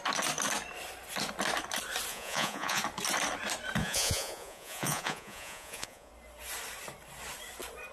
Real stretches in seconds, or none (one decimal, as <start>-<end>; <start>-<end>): 0.0-2.1; 2.8-3.8; 6.1-7.9